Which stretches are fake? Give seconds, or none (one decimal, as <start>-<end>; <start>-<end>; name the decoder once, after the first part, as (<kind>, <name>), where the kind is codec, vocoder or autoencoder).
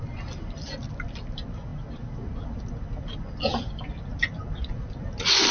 none